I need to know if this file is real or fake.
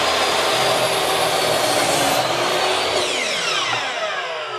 real